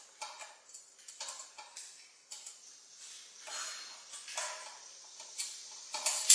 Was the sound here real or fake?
real